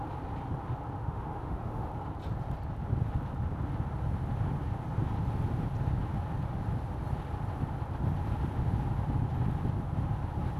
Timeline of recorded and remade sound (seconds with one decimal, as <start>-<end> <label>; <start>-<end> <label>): 0.0-1.0 recorded; 1.0-1.9 remade; 1.9-10.6 recorded